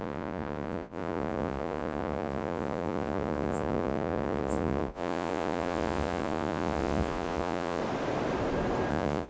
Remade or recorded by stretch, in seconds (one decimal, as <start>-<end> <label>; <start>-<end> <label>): 0.0-7.8 remade; 7.8-8.9 recorded; 8.9-9.3 remade

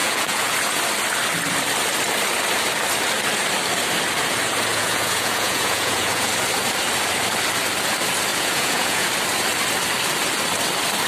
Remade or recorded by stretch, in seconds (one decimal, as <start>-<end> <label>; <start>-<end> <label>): 0.0-0.8 remade; 0.8-4.7 recorded; 4.7-6.3 remade; 6.3-8.3 recorded; 8.3-9.1 remade; 9.1-11.1 recorded

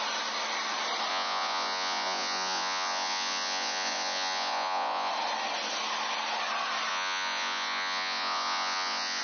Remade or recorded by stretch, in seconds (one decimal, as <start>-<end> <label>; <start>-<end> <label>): 0.0-1.1 recorded; 1.1-5.1 remade; 5.1-6.9 recorded; 6.9-9.2 remade

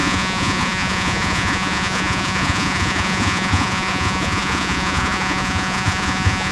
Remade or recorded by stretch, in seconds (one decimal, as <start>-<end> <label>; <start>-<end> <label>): 0.0-6.5 remade

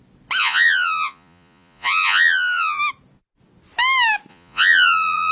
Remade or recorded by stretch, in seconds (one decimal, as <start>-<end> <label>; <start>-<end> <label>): 0.0-0.4 recorded; 0.4-2.8 remade; 2.8-4.3 recorded; 4.3-5.3 remade

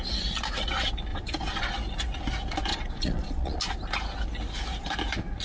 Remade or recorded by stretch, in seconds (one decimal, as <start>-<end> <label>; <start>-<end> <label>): 0.0-1.1 recorded; 1.1-1.6 remade; 1.6-2.7 recorded; 2.7-3.6 remade; 3.6-5.4 recorded